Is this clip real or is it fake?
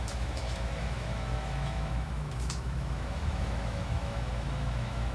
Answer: fake